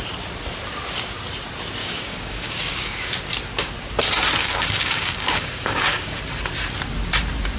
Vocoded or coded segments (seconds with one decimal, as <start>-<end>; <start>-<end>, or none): 1.8-3.3; 4.4-6.2